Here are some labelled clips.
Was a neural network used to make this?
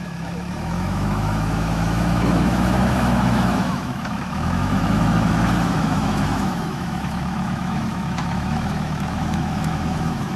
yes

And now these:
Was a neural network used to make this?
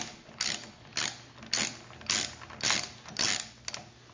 no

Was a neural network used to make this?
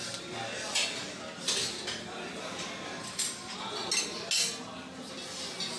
no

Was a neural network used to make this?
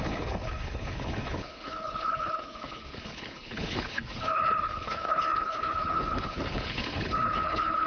yes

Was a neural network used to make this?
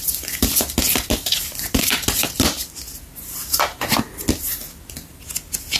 no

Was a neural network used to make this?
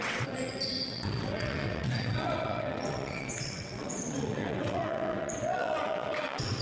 yes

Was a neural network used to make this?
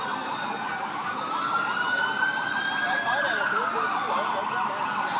no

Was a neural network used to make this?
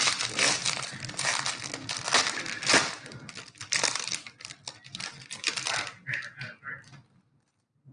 no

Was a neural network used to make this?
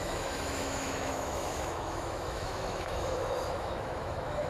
yes